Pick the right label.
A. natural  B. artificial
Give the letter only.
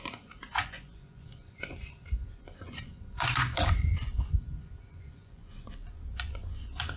B